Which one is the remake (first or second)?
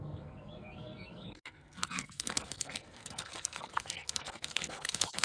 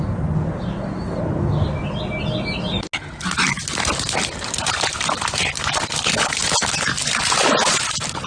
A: first